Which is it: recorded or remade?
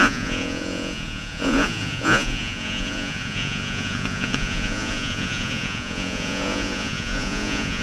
remade